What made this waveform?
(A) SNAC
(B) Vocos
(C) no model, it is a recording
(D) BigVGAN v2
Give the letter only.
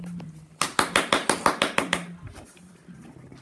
C